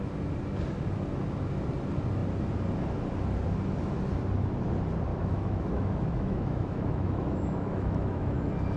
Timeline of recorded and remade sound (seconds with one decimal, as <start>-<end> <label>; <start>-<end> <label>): 0.0-5.1 recorded; 5.1-8.4 remade; 8.4-8.8 recorded